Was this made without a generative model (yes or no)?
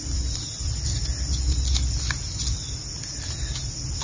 yes